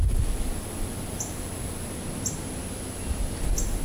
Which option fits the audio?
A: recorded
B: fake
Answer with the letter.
A